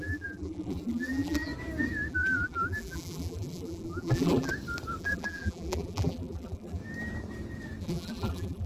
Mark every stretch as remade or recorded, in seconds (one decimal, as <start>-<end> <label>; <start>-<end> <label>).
0.0-1.5 remade; 1.5-2.1 recorded; 2.1-4.5 remade; 4.5-5.0 recorded; 5.0-6.8 remade; 6.8-7.8 recorded; 7.8-8.7 remade